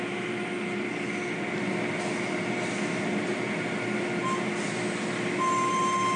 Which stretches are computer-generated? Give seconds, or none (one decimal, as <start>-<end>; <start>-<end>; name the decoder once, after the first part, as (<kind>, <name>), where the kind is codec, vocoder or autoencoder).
none